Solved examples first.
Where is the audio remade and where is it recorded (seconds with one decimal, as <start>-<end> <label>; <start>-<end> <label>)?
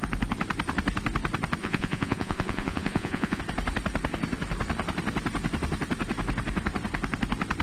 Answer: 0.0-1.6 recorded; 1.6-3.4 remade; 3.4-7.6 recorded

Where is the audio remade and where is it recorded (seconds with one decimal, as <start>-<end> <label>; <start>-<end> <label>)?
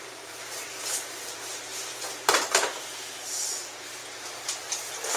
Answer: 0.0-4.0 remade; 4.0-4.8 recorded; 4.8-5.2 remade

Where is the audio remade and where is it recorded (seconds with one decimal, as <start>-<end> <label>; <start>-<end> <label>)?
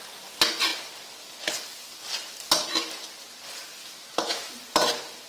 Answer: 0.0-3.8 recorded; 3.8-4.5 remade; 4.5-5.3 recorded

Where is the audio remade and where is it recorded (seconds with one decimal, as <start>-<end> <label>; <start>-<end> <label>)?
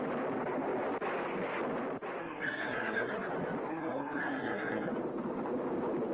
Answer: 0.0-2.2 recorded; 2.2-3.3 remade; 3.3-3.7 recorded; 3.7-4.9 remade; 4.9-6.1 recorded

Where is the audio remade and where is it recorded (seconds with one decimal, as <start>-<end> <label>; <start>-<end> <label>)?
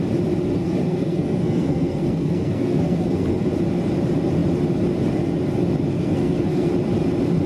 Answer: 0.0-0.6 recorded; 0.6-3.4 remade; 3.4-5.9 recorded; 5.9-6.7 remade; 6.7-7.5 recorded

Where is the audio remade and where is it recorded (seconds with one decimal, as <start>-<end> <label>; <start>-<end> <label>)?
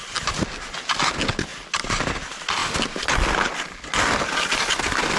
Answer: 0.0-5.2 recorded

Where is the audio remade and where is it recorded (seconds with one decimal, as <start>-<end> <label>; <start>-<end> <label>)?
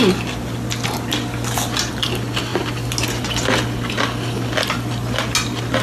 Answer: 0.0-5.8 recorded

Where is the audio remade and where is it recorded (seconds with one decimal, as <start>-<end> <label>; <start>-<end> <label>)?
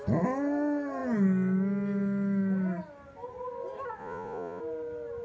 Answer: 0.0-4.0 recorded; 4.0-4.6 remade; 4.6-5.2 recorded